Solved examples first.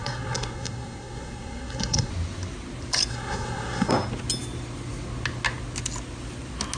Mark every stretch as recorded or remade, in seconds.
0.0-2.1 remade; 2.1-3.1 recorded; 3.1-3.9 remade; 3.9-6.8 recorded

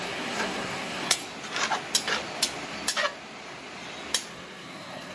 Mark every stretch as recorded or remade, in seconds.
0.0-1.2 remade; 1.2-4.3 recorded; 4.3-5.1 remade

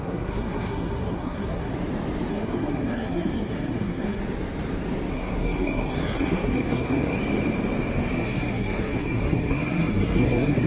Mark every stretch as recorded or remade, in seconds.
0.0-1.7 remade; 1.7-2.3 recorded; 2.3-4.2 remade; 4.2-5.1 recorded; 5.1-7.2 remade; 7.2-8.1 recorded; 8.1-10.7 remade

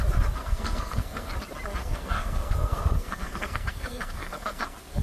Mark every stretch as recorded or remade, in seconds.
0.0-0.4 recorded; 0.4-1.3 remade; 1.3-1.8 recorded; 1.8-5.0 remade

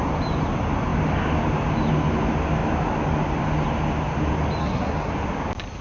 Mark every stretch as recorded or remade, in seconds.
0.0-4.6 recorded; 4.6-5.1 remade; 5.1-5.8 recorded